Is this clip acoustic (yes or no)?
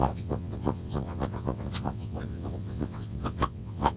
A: no